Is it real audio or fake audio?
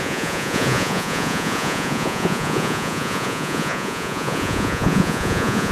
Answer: fake